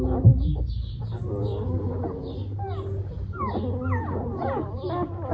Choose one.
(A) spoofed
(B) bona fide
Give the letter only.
B